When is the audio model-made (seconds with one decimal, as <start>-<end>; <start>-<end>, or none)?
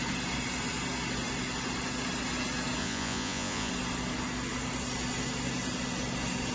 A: 2.8-3.7